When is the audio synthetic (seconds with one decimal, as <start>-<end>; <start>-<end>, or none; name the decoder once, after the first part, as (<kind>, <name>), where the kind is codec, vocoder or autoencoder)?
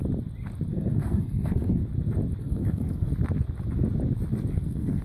0.7-1.8 (codec, SNAC); 2.4-3.1; 4.5-5.0